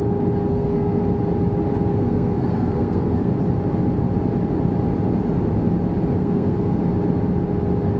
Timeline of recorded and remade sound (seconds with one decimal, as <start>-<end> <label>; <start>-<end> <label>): 0.0-0.5 recorded; 0.5-1.0 remade; 1.0-1.9 recorded; 1.9-3.3 remade; 3.3-6.2 recorded; 6.2-6.8 remade; 6.8-8.0 recorded